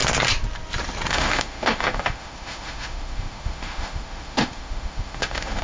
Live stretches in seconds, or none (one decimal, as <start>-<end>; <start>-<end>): 0.0-1.1